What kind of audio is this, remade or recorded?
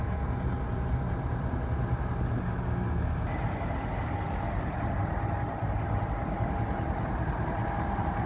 recorded